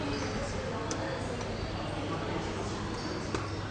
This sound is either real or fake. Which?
real